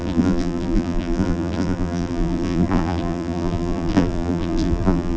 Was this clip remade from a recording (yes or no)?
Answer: yes